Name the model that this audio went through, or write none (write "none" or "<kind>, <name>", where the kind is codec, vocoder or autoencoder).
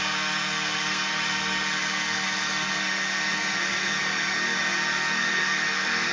codec, SNAC